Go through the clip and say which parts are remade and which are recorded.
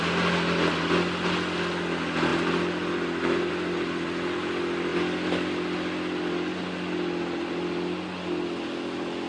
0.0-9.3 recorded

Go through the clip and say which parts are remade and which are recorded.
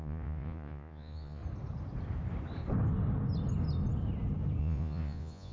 0.0-1.4 remade; 1.4-4.6 recorded; 4.6-5.5 remade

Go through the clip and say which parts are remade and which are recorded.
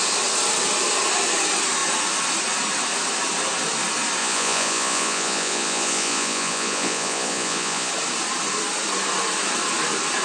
0.0-4.2 recorded; 4.2-7.9 remade; 7.9-10.2 recorded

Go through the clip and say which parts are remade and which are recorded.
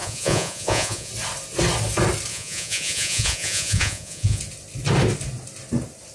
0.0-1.1 remade; 1.1-2.3 recorded; 2.3-4.4 remade; 4.4-6.1 recorded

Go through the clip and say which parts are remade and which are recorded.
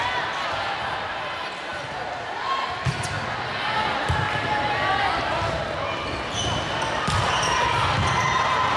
0.0-8.8 recorded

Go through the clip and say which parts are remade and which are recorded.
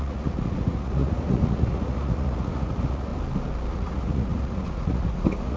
0.0-3.1 remade; 3.1-3.7 recorded; 3.7-5.6 remade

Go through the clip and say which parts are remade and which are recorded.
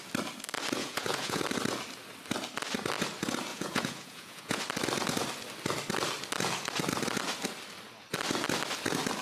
0.0-0.8 recorded; 0.8-1.4 remade; 1.4-3.5 recorded; 3.5-4.6 remade; 4.6-9.2 recorded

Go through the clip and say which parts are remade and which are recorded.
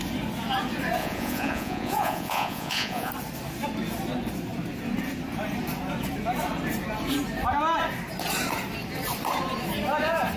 0.0-1.0 recorded; 1.0-3.1 remade; 3.1-10.4 recorded